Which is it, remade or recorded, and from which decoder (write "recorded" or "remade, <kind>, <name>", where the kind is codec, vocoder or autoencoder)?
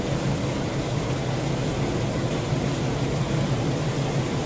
recorded